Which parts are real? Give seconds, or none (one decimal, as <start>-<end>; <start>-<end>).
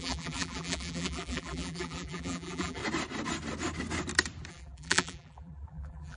2.8-4.5